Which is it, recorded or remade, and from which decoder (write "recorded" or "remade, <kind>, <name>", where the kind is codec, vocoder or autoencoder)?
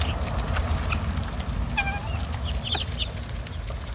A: recorded